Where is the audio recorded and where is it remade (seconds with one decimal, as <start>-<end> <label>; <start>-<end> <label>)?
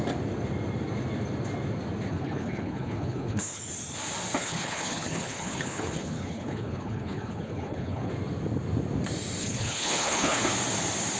0.0-2.1 recorded; 2.1-3.6 remade; 3.6-4.4 recorded; 4.4-8.1 remade; 8.1-9.4 recorded; 9.4-10.4 remade; 10.4-11.2 recorded